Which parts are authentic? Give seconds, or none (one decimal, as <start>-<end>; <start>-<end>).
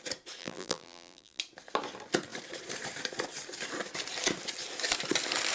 0.0-0.4; 1.4-5.5